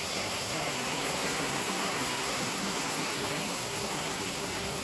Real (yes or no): no